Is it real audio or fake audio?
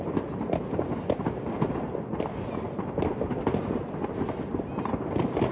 real